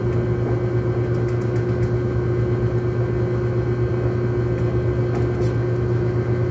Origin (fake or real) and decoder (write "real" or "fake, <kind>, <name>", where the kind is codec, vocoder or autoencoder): real